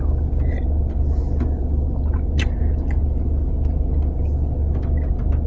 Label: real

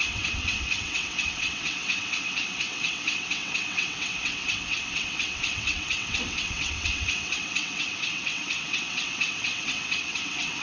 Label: fake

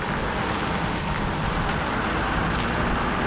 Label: real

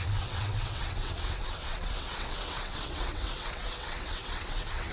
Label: fake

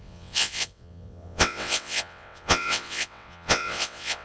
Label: fake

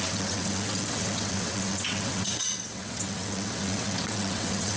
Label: fake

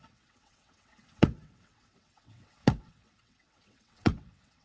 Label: fake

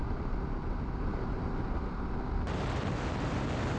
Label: real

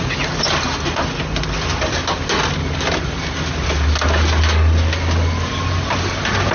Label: real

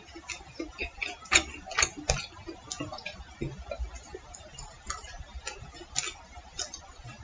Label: real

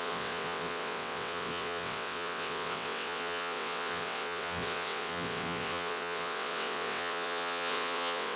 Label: fake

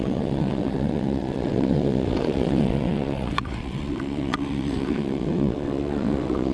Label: fake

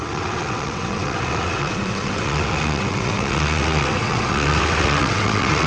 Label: fake